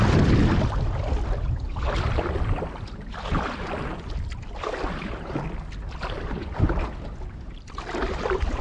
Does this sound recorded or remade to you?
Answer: recorded